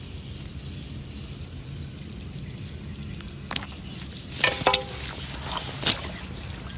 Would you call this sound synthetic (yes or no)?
no